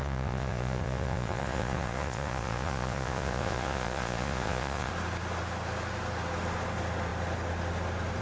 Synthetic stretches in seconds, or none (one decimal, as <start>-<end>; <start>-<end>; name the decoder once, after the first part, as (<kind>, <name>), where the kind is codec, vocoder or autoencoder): 0.0-4.9 (vocoder, Vocos)